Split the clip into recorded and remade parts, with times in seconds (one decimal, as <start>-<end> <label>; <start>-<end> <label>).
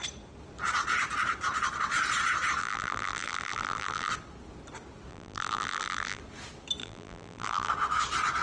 0.0-2.6 recorded; 2.6-4.1 remade; 4.1-5.1 recorded; 5.1-6.2 remade; 6.2-6.8 recorded; 6.8-7.7 remade; 7.7-8.4 recorded